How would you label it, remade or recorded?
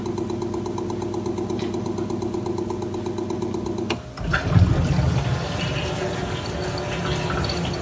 recorded